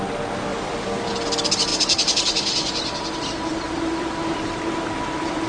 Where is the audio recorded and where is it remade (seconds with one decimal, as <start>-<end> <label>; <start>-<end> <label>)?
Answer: 0.0-0.5 recorded; 0.5-1.1 remade; 1.1-1.7 recorded; 1.7-4.6 remade; 4.6-5.5 recorded